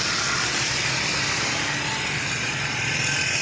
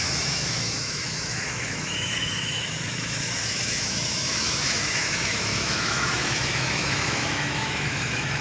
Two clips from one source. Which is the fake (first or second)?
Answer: second